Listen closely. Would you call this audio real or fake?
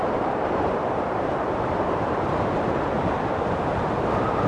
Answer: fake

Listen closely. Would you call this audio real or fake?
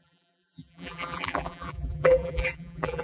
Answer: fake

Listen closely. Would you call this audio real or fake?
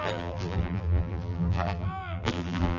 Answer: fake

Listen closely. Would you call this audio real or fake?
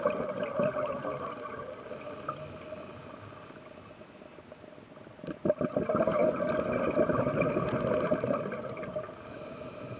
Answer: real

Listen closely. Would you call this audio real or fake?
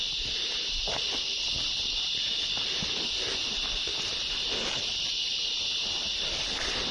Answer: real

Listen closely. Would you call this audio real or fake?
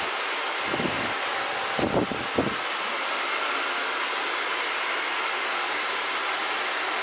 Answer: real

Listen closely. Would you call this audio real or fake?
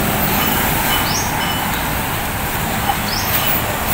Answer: real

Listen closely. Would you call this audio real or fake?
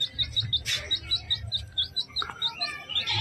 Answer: real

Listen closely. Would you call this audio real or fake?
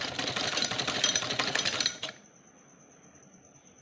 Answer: fake